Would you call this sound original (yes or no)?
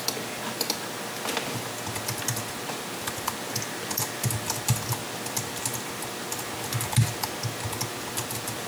yes